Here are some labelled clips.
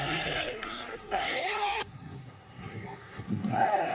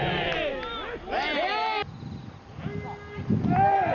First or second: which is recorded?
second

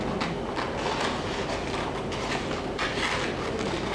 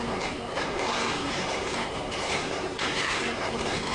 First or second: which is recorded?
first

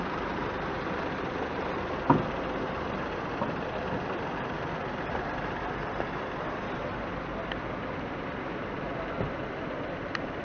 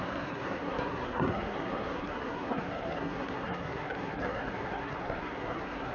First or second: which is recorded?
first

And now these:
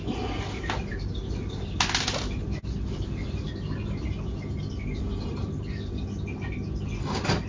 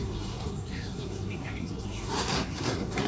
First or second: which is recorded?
first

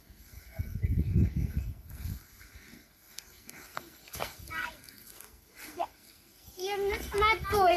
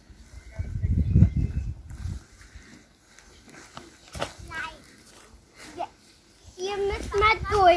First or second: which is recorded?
second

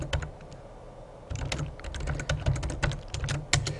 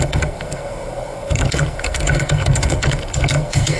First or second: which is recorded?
first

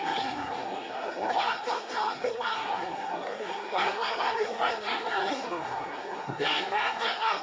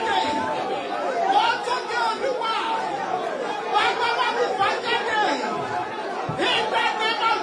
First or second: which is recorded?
second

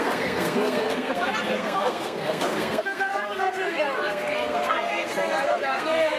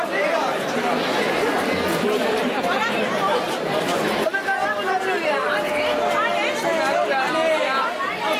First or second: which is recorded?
second